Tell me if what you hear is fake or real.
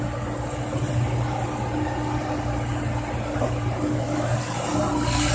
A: real